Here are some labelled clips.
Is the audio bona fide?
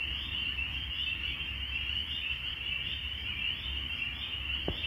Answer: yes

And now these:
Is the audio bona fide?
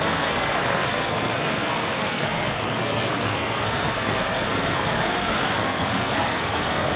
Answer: no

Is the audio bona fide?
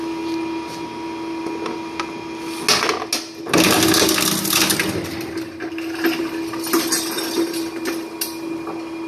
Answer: yes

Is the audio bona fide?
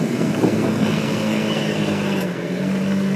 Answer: no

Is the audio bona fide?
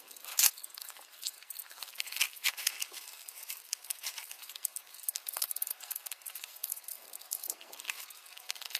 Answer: no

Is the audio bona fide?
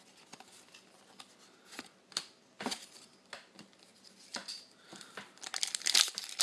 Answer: yes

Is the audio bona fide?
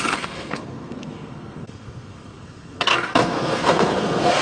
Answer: no